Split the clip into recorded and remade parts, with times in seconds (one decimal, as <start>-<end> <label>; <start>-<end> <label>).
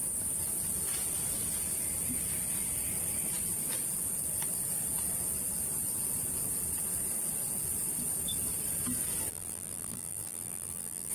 0.0-9.3 recorded; 9.3-11.1 remade